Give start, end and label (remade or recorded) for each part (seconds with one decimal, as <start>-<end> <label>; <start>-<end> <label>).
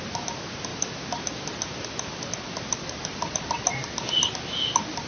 0.0-5.1 recorded